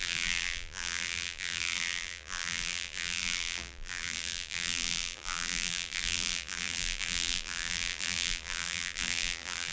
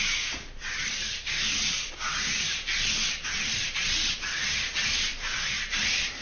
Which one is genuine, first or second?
second